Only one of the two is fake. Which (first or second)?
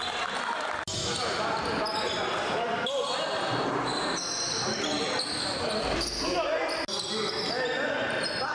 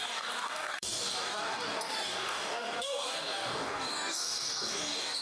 second